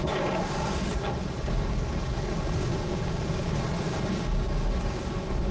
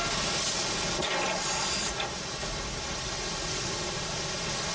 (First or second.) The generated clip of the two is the first